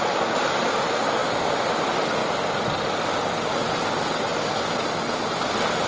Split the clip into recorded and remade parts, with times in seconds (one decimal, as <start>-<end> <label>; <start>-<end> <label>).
0.0-5.9 recorded